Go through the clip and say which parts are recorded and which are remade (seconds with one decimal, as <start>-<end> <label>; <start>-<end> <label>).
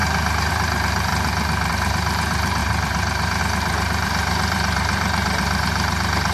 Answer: 0.0-0.5 recorded; 0.5-1.1 remade; 1.1-1.7 recorded; 1.7-6.3 remade